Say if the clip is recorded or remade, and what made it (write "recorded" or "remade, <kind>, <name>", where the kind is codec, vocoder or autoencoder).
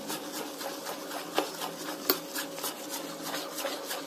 recorded